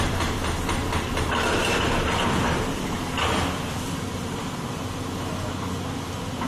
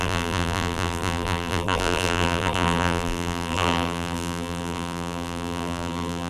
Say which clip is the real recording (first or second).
first